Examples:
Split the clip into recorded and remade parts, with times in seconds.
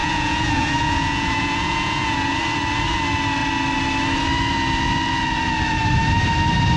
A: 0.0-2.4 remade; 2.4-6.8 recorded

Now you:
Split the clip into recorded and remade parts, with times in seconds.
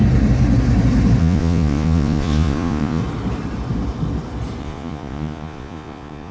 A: 0.0-1.2 recorded; 1.2-3.0 remade; 3.0-4.6 recorded; 4.6-6.3 remade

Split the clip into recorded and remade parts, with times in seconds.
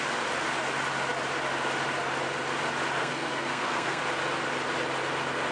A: 0.0-3.0 recorded; 3.0-4.0 remade; 4.0-5.5 recorded